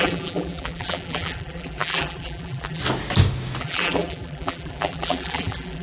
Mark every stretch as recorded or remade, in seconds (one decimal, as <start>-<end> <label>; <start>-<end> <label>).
0.0-2.8 remade; 2.8-3.6 recorded; 3.6-5.8 remade

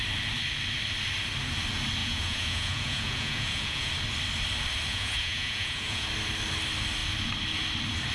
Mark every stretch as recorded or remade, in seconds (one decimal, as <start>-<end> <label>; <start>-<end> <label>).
0.0-2.0 recorded; 2.0-3.9 remade; 3.9-4.9 recorded; 4.9-6.1 remade; 6.1-8.1 recorded